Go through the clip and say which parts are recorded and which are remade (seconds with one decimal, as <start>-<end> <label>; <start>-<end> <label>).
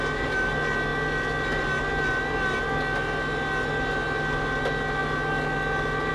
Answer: 0.0-6.1 recorded